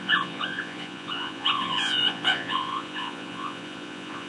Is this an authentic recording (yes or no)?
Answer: no